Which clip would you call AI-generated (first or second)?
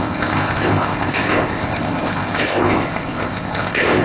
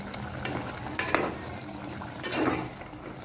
first